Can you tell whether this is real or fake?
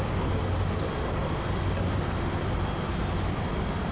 real